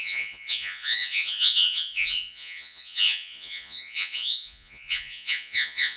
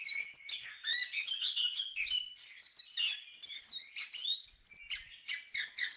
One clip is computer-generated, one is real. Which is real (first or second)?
second